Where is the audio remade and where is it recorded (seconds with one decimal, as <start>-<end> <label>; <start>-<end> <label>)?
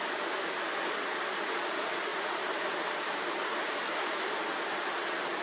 0.0-5.4 recorded